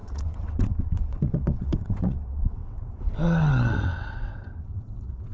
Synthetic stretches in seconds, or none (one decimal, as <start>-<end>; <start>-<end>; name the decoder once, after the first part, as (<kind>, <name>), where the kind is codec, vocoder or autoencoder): 0.0-5.3 (vocoder, WaveNeXt)